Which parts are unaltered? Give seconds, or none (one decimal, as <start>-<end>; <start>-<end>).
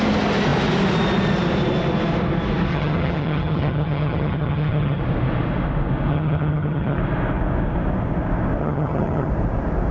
0.0-2.7; 5.0-6.1; 7.0-8.6; 9.3-9.9